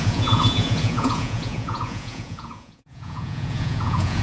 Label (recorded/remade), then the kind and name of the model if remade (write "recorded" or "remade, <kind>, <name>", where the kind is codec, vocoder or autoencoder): remade, vocoder, Vocos